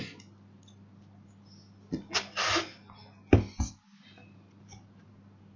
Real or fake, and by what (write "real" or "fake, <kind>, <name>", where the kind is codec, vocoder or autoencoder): real